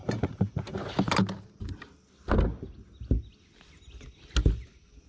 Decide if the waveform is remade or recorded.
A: recorded